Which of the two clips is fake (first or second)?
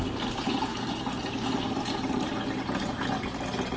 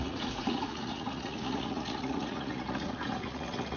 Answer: second